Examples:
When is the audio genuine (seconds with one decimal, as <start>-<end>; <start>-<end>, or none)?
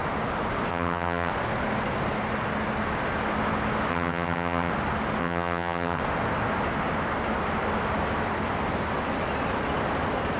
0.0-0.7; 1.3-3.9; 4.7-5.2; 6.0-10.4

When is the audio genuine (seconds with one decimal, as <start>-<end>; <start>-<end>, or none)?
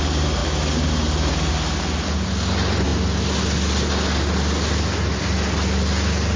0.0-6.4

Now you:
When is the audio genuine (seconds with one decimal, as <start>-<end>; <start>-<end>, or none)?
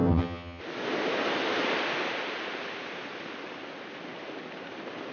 0.6-5.1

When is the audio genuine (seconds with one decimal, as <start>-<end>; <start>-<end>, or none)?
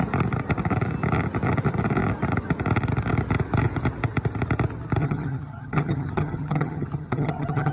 0.0-5.0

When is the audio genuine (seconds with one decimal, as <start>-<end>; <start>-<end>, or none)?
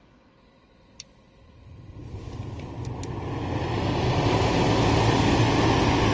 0.0-6.1